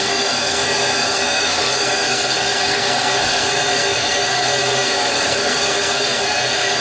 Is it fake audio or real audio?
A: fake